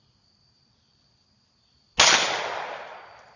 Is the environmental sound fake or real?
real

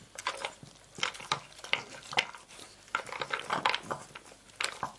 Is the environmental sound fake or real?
real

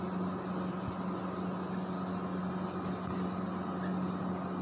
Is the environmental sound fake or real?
real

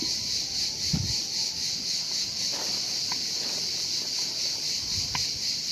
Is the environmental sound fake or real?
real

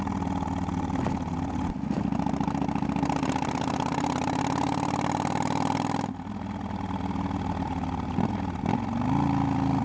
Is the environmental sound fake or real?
real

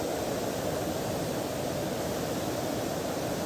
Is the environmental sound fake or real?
real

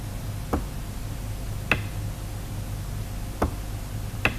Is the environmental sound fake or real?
real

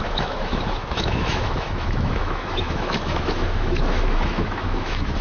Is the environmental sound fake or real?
fake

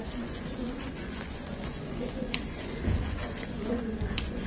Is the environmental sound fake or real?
fake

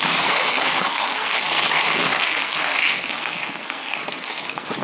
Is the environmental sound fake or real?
fake